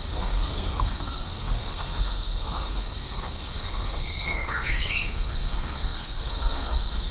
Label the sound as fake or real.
fake